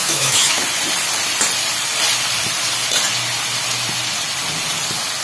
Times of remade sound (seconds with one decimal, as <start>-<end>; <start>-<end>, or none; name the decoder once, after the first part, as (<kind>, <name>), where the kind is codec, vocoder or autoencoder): 0.0-0.6 (autoencoder, DAC-VAE)